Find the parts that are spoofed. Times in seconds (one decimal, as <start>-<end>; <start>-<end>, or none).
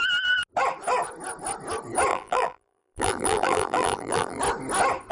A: 2.1-4.4